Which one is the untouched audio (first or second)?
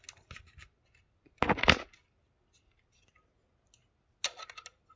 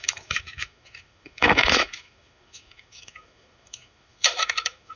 first